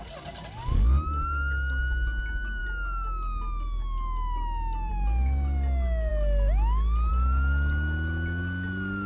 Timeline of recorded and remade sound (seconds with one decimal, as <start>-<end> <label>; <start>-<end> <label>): 0.0-9.1 recorded